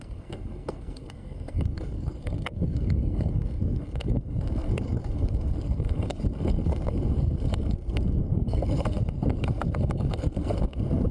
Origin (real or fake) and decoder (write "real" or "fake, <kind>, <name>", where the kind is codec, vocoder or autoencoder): fake, codec, SNAC